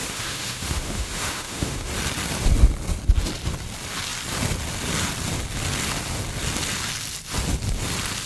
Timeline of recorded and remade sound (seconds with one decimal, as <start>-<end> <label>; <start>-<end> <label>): 0.0-1.9 remade; 1.9-8.3 recorded